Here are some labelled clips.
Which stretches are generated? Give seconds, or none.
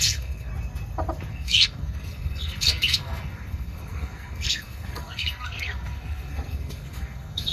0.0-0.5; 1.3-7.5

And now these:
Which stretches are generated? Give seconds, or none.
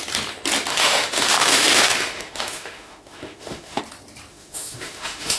0.7-3.8; 4.3-5.4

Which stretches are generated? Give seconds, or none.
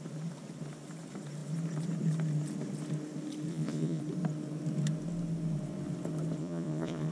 3.5-4.0; 6.4-7.1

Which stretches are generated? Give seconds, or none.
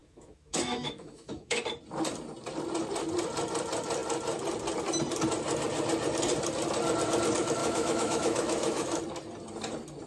0.0-1.6; 7.6-9.0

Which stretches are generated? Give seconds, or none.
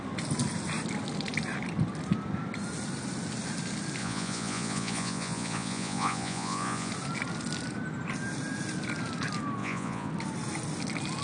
4.0-6.9; 9.6-10.1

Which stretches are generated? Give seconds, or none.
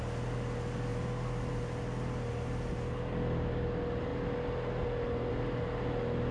none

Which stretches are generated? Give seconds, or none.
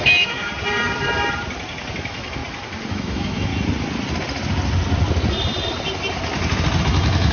0.0-0.5; 1.9-2.4; 2.9-3.5; 6.8-7.3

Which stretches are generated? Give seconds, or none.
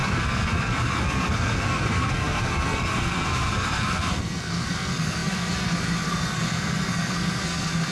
0.0-7.9